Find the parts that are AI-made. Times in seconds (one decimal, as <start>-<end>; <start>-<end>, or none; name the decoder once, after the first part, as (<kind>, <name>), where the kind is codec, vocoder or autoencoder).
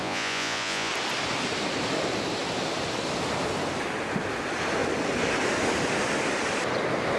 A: 0.0-0.9 (vocoder, Vocos)